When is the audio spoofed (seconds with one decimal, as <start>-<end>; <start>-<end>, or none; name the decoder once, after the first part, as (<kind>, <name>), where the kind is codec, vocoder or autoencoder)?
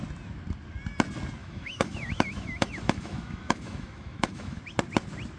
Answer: 1.4-4.6 (autoencoder, DAC-VAE)